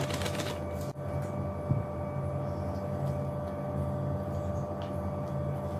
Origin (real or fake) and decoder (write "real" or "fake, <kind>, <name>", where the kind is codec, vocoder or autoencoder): real